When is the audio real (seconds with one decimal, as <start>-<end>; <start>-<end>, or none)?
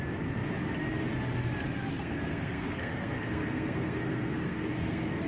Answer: 0.0-1.9